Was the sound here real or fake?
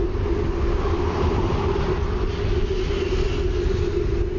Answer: real